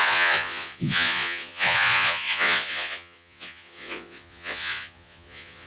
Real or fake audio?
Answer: fake